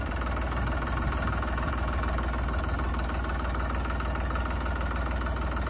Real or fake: real